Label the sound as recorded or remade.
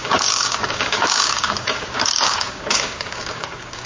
remade